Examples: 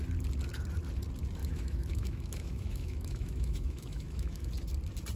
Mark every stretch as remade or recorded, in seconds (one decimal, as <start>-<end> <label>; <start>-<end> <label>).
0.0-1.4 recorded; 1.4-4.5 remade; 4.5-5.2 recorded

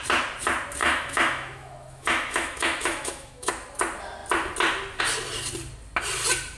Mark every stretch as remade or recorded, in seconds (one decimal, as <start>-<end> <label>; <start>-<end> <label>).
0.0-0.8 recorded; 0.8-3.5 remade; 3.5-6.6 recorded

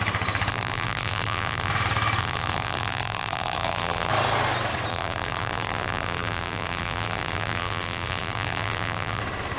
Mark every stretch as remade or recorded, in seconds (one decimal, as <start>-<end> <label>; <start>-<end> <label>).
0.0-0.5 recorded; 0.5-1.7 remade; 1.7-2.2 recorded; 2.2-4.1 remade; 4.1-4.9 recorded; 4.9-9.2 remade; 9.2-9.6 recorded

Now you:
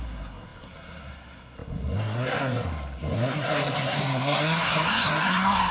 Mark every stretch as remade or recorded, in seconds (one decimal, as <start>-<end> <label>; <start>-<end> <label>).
0.0-5.7 remade

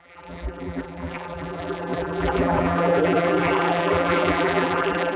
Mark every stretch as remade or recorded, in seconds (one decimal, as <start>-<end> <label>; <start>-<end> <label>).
0.0-5.2 remade

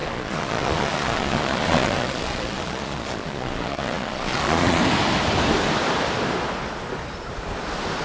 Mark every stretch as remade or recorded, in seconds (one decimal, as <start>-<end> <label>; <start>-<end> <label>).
0.0-4.8 remade; 4.8-8.0 recorded

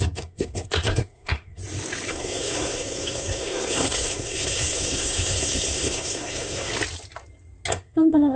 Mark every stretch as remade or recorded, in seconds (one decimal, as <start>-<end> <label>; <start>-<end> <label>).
0.0-1.6 remade; 1.6-2.1 recorded; 2.1-6.7 remade; 6.7-7.7 recorded; 7.7-8.4 remade

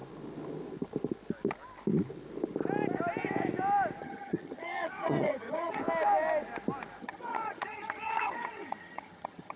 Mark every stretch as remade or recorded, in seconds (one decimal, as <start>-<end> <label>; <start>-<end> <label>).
0.0-4.0 recorded; 4.0-5.8 remade; 5.8-7.0 recorded; 7.0-9.6 remade